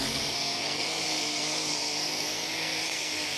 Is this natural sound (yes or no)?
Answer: no